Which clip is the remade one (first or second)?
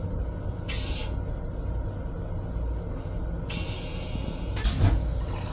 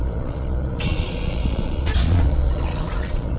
second